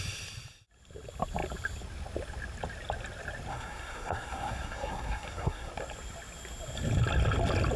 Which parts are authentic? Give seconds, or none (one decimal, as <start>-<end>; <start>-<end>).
0.0-3.5; 5.7-7.8